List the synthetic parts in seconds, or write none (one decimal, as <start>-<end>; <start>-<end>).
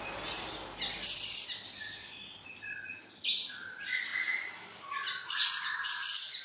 none